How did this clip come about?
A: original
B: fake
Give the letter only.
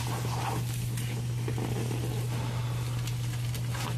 A